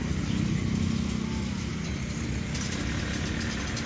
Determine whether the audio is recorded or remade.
recorded